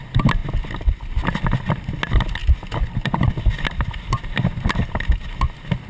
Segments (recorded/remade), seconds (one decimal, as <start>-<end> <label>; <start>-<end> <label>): 0.0-5.9 recorded